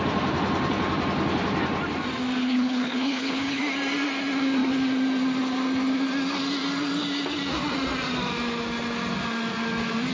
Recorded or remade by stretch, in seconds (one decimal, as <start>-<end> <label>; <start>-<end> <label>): 0.0-2.4 recorded; 2.4-3.6 remade; 3.6-10.1 recorded

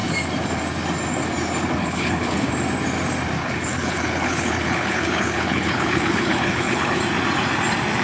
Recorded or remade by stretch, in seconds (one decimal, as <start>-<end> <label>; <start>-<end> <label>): 0.0-1.8 recorded; 1.8-2.5 remade; 2.5-3.4 recorded; 3.4-7.0 remade; 7.0-8.0 recorded

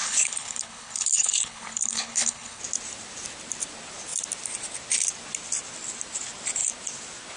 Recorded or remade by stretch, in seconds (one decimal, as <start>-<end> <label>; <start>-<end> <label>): 0.0-2.6 remade; 2.6-7.4 recorded

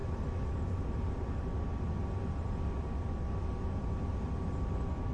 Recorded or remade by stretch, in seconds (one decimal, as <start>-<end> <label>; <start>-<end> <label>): 0.0-5.1 recorded

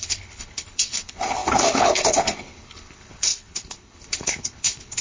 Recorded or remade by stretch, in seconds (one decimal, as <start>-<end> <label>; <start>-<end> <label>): 0.0-5.0 remade

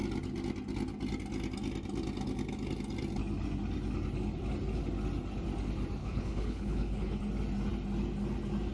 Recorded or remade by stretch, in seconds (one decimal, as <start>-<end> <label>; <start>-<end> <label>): 0.0-6.0 recorded; 6.0-7.2 remade; 7.2-8.7 recorded

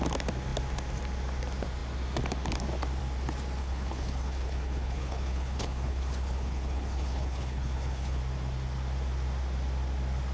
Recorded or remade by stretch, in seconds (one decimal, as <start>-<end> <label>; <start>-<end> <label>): 0.0-3.6 recorded; 3.6-8.2 remade; 8.2-10.3 recorded